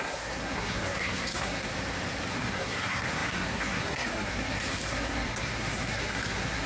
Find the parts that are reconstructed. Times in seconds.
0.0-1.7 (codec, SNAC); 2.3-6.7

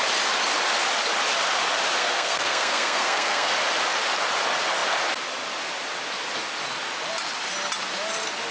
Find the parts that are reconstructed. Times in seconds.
2.0-3.5 (codec, SNAC)

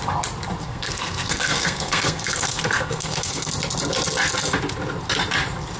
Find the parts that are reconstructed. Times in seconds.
0.6-3.5 (codec, SNAC)

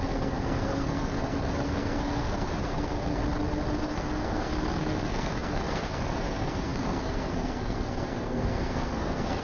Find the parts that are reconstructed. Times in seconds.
0.0-3.2 (codec, SNAC); 3.8-9.4

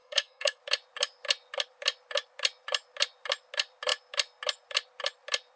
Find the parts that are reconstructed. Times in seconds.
0.0-0.6 (codec, SNAC)

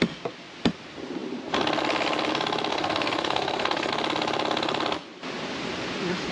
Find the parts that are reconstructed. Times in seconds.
2.7-3.9 (codec, SNAC)

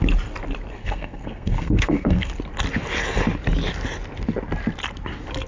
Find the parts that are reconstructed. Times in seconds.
0.8-2.3 (codec, SNAC)